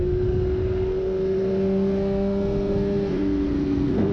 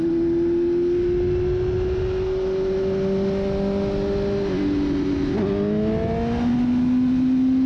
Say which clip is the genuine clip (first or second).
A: second